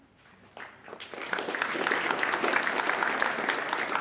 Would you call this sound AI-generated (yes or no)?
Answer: no